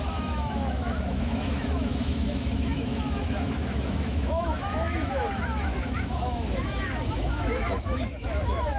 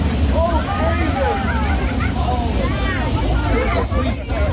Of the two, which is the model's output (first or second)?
first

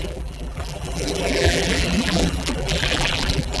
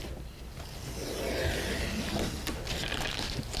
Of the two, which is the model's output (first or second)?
first